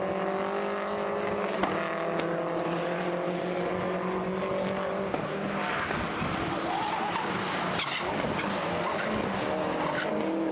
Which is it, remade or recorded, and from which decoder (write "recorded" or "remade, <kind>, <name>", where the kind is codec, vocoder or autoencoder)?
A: recorded